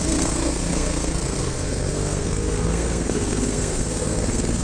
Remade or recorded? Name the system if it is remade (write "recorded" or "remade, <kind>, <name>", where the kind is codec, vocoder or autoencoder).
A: remade, codec, SNAC